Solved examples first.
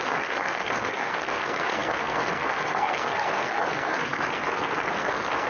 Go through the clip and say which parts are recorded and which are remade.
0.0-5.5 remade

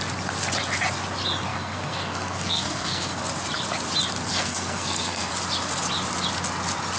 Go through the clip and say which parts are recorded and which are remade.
0.0-1.5 recorded; 1.5-3.2 remade; 3.2-4.3 recorded; 4.3-5.3 remade; 5.3-7.0 recorded

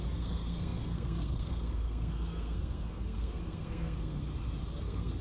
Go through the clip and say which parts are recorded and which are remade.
0.0-4.3 remade; 4.3-4.8 recorded; 4.8-5.2 remade

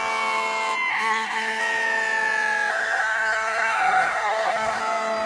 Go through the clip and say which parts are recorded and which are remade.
0.0-0.9 recorded; 0.9-1.6 remade; 1.6-2.7 recorded; 2.7-4.8 remade; 4.8-5.3 recorded

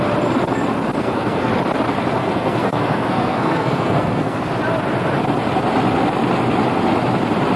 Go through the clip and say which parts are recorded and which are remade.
0.0-1.0 recorded; 1.0-1.5 remade; 1.5-2.2 recorded; 2.2-4.4 remade; 4.4-7.6 recorded

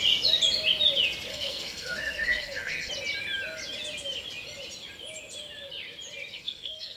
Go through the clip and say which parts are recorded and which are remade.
0.0-1.3 recorded; 1.3-2.9 remade; 2.9-6.3 recorded; 6.3-7.0 remade

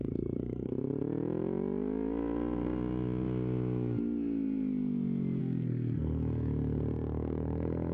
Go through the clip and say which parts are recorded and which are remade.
0.0-0.7 remade; 0.7-5.4 recorded; 5.4-7.9 remade